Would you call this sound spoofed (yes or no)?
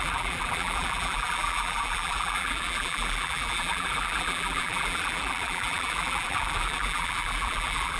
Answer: yes